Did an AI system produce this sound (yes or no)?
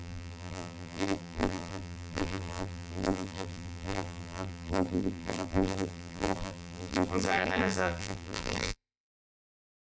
yes